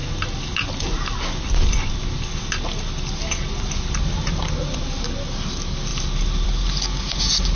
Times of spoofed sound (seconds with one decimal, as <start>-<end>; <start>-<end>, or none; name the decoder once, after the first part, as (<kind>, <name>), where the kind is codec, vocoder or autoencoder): 5.9-7.1 (vocoder, BigVGAN v2)